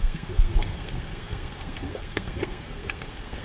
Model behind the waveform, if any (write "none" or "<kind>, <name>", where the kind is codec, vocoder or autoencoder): codec, SNAC